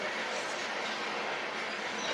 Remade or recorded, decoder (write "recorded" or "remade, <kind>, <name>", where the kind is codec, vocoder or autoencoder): recorded